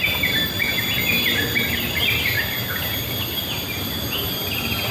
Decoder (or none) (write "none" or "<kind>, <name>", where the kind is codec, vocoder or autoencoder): none